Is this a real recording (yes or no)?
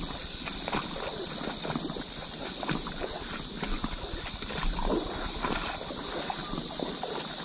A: yes